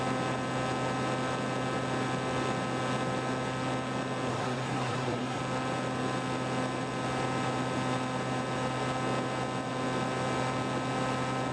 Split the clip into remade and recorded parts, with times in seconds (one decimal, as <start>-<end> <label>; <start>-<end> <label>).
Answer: 0.0-4.3 recorded; 4.3-5.4 remade; 5.4-11.5 recorded